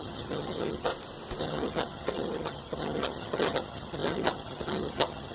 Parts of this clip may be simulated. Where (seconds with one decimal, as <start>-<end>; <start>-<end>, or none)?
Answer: 0.0-0.9; 1.4-5.3